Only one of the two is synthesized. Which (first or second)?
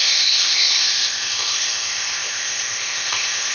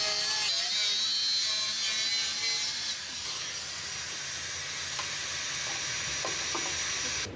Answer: first